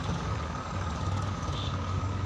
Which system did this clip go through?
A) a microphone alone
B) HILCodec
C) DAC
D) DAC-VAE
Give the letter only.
C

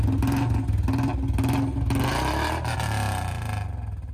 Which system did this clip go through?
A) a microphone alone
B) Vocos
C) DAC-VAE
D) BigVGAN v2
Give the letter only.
A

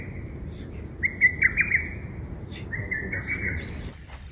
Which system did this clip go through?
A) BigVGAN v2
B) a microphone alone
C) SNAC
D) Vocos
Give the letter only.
B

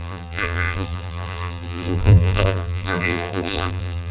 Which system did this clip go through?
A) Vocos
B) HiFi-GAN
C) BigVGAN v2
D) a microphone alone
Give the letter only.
C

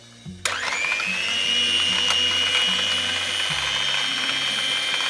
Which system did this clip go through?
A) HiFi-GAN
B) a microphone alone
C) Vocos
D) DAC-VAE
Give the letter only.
B